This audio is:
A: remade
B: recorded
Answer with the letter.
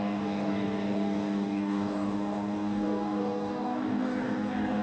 A